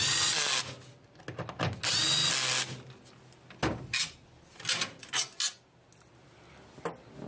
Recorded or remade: recorded